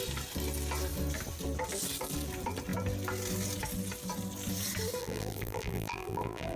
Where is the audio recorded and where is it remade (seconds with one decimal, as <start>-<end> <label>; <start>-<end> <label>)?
0.0-5.0 recorded; 5.0-6.6 remade